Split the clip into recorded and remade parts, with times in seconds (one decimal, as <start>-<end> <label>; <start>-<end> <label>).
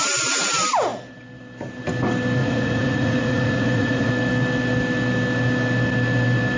0.0-2.4 recorded; 2.4-4.1 remade; 4.1-6.6 recorded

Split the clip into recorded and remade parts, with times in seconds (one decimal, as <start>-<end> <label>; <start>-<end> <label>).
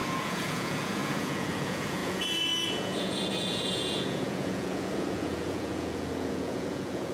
0.0-7.1 remade